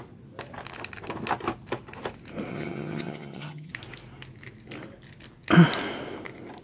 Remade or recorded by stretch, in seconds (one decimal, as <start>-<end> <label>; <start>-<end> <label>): 0.0-2.5 recorded; 2.5-3.7 remade; 3.7-6.6 recorded